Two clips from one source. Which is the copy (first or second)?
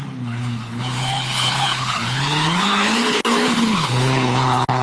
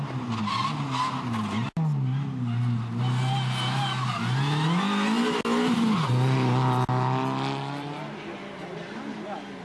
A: first